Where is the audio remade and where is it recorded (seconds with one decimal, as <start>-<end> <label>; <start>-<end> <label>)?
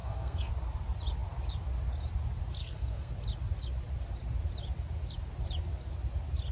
0.0-0.5 remade; 0.5-2.6 recorded; 2.6-3.1 remade; 3.1-6.5 recorded